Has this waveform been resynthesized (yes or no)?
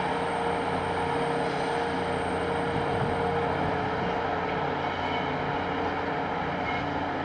no